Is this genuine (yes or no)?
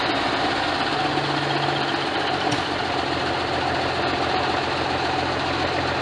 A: yes